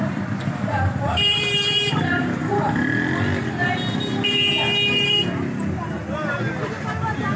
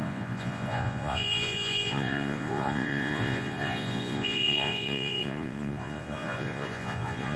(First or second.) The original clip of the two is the first